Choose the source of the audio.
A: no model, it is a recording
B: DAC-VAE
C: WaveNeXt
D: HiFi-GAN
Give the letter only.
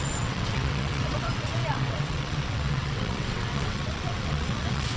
C